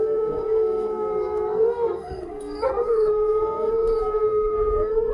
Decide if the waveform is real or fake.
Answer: fake